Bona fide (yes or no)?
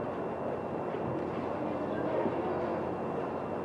yes